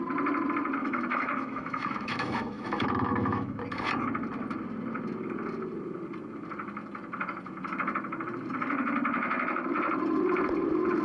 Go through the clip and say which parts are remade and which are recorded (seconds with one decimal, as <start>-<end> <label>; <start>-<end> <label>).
0.0-0.8 recorded; 0.8-3.6 remade; 3.6-11.0 recorded